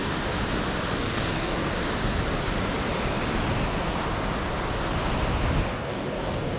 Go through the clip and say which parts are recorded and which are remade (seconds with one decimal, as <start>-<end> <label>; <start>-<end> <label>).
0.0-1.0 recorded; 1.0-1.7 remade; 1.7-5.7 recorded; 5.7-6.6 remade